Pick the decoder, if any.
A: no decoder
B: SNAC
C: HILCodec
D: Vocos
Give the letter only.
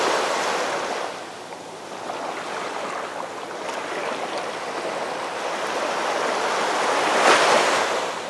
A